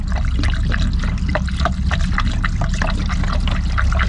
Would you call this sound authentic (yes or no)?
yes